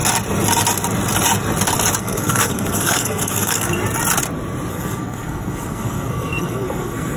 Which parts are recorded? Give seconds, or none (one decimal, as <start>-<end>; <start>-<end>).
0.0-2.0; 3.8-4.7